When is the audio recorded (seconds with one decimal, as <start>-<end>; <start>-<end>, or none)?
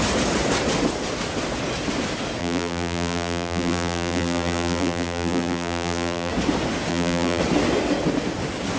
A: 0.0-2.4; 6.3-6.9; 7.4-8.8